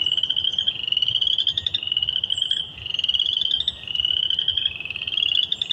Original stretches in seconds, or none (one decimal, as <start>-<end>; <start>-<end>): 0.0-5.7